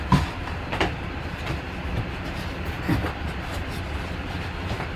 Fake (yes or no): no